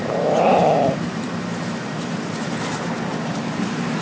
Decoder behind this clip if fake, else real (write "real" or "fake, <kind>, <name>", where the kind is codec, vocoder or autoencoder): fake, vocoder, BigVGAN v2